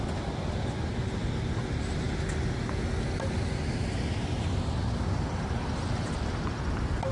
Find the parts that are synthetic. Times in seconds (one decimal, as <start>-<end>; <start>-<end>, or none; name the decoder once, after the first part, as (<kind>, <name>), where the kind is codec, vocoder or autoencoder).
none